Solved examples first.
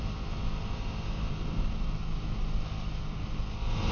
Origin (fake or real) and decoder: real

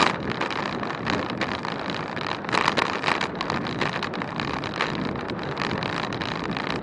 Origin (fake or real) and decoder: real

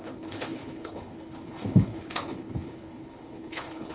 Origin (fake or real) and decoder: fake, codec, HILCodec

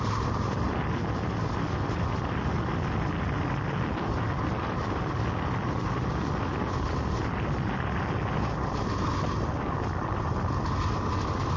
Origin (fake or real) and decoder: real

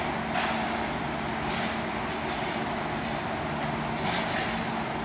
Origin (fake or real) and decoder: real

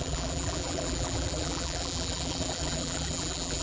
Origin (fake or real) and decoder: fake, vocoder, BigVGAN v2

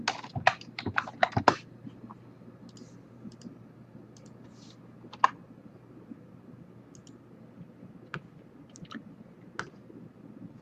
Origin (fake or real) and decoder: real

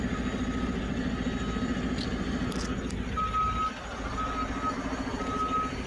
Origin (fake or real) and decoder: real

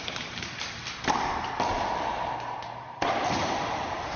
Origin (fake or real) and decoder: fake, vocoder, BigVGAN v2